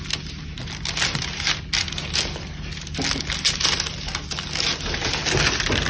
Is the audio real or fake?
real